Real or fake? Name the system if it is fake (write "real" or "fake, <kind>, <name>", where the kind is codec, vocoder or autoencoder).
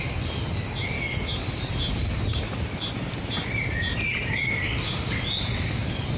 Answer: real